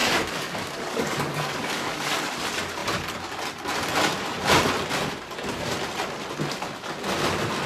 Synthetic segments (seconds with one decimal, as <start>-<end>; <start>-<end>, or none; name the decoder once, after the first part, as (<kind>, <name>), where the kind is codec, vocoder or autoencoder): 0.0-2.3 (codec, DAC)